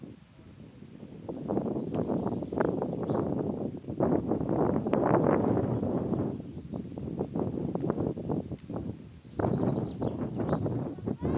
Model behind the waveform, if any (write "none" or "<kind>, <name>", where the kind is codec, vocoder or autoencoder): none